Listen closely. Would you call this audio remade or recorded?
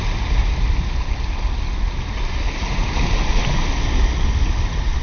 recorded